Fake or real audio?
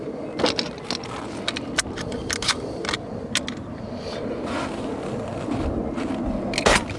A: real